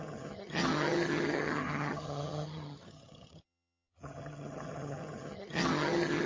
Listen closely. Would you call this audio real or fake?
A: fake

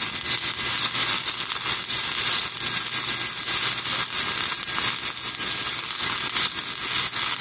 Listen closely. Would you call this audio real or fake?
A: real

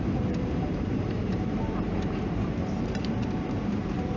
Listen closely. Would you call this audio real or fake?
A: fake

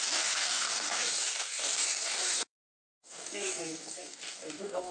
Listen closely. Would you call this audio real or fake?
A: fake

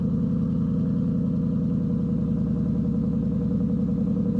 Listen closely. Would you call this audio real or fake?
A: real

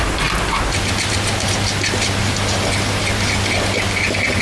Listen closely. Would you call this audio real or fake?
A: real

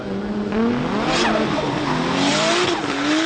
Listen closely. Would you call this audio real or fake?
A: real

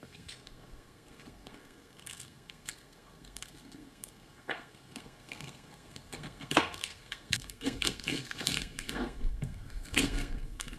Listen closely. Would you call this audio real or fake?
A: fake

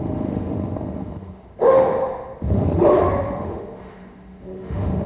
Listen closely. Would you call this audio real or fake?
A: fake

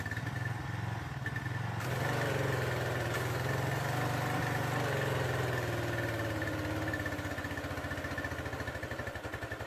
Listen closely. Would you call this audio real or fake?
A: real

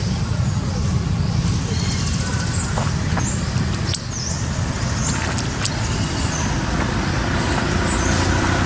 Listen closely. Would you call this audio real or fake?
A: real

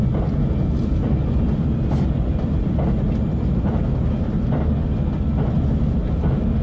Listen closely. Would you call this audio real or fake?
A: real